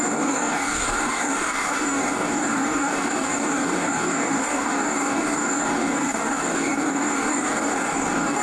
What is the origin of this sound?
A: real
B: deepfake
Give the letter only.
B